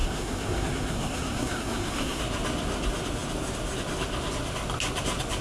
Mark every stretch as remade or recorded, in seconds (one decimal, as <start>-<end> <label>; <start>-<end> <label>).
0.0-2.2 remade; 2.2-5.4 recorded